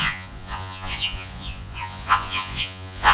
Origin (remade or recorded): remade